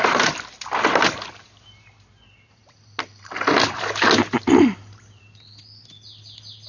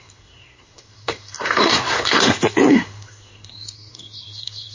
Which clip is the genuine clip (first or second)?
first